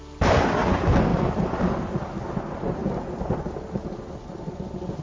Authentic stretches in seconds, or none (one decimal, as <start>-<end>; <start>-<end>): 0.0-5.0